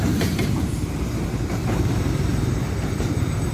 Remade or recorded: remade